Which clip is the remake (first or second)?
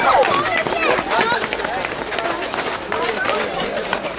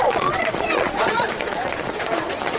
second